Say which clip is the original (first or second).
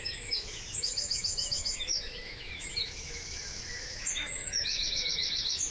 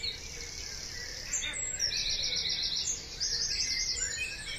second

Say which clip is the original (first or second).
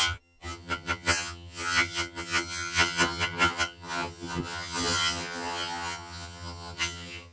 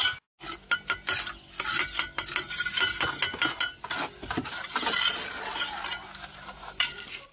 second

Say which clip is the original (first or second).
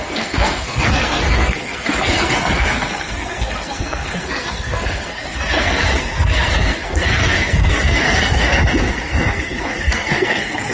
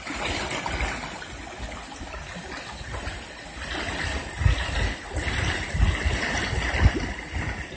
second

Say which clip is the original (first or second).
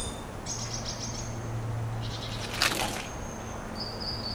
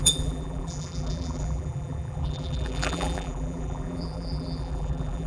first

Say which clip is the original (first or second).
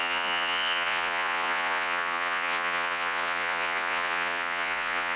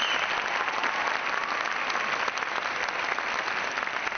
second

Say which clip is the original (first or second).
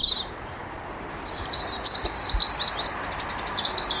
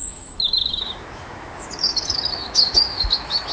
first